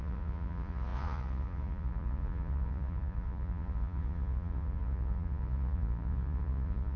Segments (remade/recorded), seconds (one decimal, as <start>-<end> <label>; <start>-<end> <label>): 0.0-7.0 remade